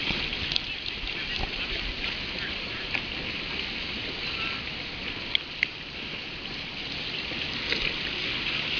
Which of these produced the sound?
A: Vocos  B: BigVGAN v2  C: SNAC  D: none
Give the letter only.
D